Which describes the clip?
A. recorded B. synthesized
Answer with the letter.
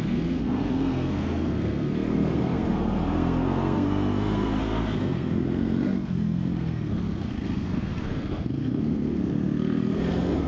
B